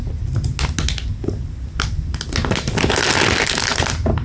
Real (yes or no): yes